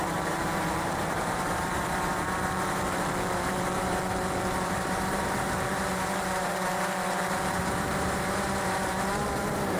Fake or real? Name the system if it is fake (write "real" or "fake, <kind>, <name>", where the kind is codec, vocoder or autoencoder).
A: fake, vocoder, BigVGAN v2